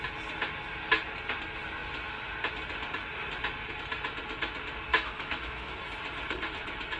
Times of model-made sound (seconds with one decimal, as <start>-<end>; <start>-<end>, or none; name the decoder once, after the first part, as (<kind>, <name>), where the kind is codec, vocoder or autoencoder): 4.9-5.7 (autoencoder, DAC-VAE)